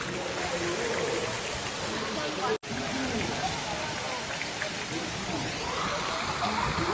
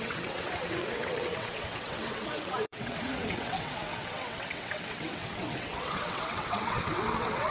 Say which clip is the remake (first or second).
second